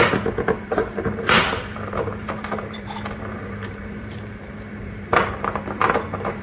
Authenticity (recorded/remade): remade